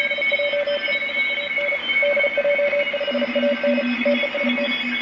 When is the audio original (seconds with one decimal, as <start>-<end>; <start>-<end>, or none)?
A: 0.0-5.0